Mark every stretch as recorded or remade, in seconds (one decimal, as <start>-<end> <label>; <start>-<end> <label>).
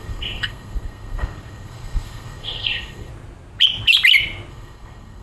0.0-3.1 remade; 3.1-4.5 recorded; 4.5-5.2 remade